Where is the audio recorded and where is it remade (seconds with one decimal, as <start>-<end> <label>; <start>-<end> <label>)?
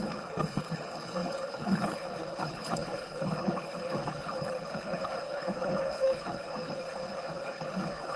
0.0-8.2 remade